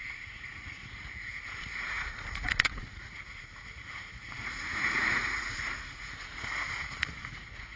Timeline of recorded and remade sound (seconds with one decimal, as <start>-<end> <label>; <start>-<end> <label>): 0.0-7.8 remade